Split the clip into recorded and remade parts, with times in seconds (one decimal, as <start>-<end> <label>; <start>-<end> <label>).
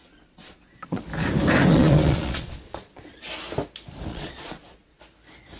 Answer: 0.0-1.0 remade; 1.0-1.7 recorded; 1.7-3.2 remade; 3.2-4.1 recorded; 4.1-5.0 remade; 5.0-5.6 recorded